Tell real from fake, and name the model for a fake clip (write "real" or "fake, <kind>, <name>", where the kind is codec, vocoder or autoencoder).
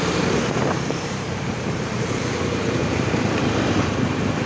fake, vocoder, BigVGAN v2